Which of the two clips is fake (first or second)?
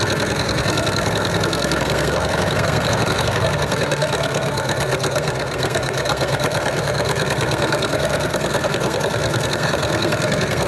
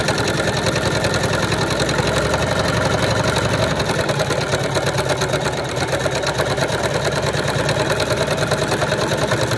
first